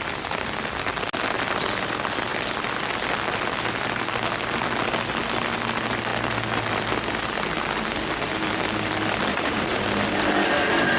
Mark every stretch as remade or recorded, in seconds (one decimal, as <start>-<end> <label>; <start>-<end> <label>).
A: 0.0-9.3 recorded; 9.3-9.8 remade; 9.8-11.0 recorded

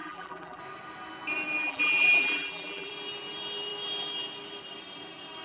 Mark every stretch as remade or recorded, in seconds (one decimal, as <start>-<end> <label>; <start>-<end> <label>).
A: 0.0-0.6 remade; 0.6-1.6 recorded; 1.6-2.9 remade; 2.9-5.4 recorded